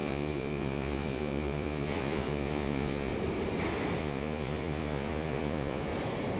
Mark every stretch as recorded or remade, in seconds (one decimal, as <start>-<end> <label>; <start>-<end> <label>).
0.0-3.1 remade; 3.1-4.0 recorded; 4.0-5.9 remade; 5.9-6.4 recorded